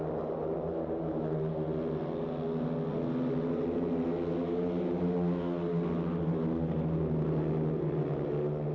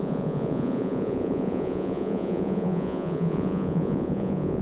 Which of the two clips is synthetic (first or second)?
second